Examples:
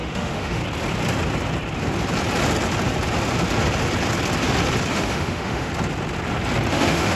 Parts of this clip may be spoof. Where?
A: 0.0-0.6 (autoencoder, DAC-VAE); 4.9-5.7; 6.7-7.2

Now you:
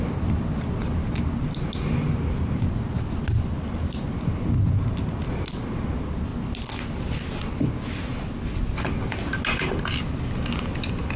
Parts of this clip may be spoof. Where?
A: none

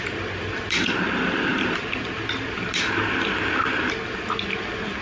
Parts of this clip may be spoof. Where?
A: none